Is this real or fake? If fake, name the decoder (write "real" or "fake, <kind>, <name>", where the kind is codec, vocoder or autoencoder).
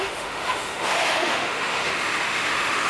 fake, autoencoder, DAC-VAE